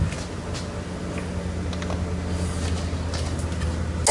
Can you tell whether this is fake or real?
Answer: real